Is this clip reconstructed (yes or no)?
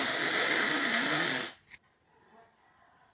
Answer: no